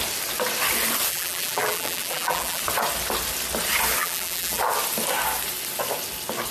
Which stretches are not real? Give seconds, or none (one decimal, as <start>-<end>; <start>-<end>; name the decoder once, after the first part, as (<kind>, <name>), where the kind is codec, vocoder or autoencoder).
1.1-2.6 (vocoder, BigVGAN v2); 4.0-4.6